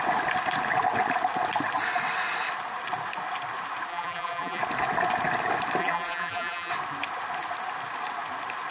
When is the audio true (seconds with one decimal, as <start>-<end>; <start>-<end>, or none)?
0.0-3.9; 4.6-5.8; 6.7-8.7